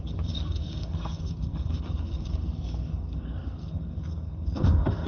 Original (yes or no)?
no